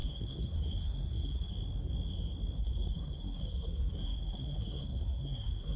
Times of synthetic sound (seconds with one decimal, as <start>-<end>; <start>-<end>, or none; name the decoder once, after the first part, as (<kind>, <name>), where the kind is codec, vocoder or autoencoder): 0.0-1.5 (codec, SNAC); 2.6-5.8